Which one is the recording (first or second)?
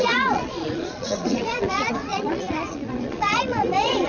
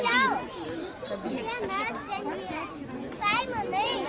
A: second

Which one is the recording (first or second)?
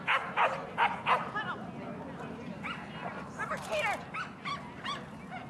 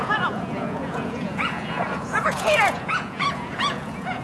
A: first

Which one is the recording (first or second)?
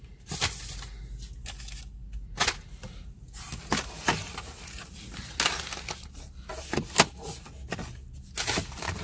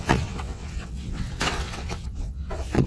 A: first